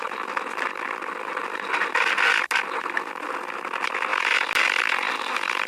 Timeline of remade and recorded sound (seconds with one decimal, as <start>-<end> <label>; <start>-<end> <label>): 0.0-5.7 recorded